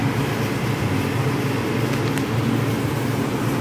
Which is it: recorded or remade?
recorded